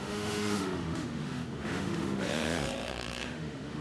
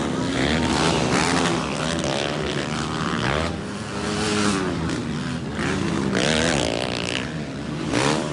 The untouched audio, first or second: second